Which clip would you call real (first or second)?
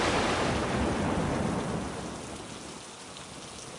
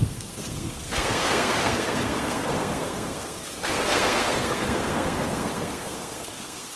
first